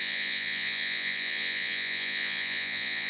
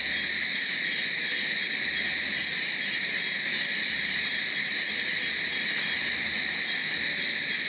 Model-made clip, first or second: first